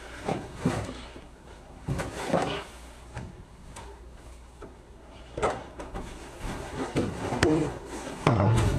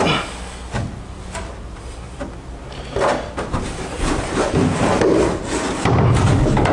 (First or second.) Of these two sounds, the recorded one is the second